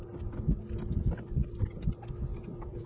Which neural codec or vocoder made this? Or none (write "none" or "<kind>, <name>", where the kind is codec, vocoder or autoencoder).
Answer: none